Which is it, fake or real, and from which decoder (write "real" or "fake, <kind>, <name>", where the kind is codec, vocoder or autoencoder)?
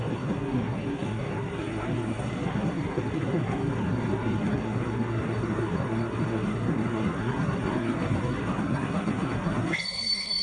fake, codec, SNAC